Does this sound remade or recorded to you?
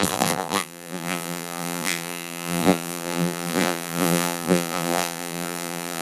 remade